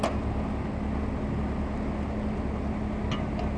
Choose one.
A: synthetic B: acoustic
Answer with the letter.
B